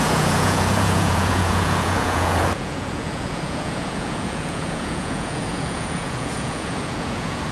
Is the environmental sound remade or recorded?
remade